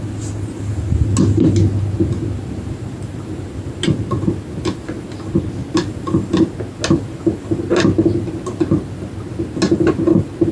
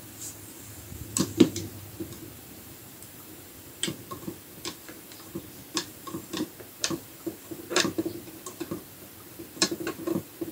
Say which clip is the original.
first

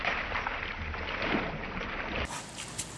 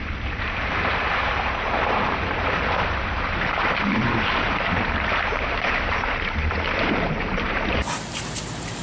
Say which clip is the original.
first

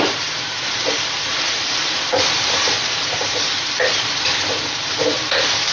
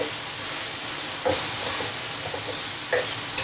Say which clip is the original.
second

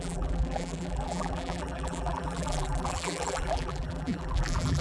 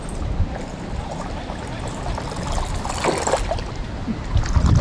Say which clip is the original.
second